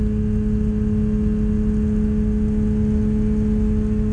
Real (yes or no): yes